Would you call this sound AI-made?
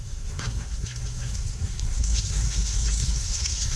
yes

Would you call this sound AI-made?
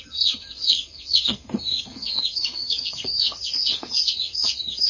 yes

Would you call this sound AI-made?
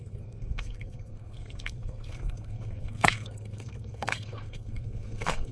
yes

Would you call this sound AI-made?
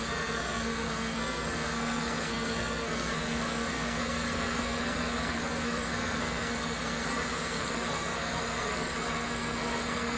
yes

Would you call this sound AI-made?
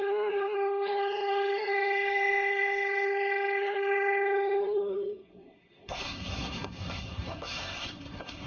yes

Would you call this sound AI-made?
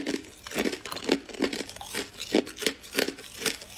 no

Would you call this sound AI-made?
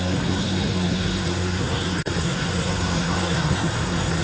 yes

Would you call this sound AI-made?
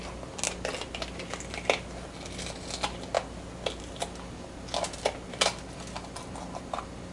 no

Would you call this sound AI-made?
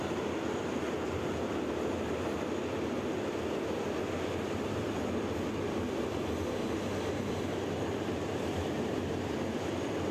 no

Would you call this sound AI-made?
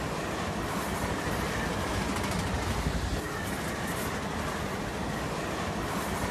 no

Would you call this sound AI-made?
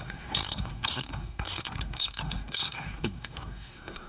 yes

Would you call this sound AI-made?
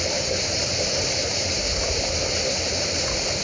no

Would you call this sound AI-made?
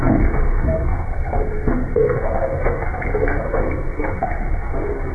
yes